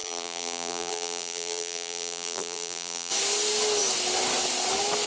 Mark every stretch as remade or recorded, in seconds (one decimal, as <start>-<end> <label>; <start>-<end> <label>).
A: 0.0-3.1 remade; 3.1-5.1 recorded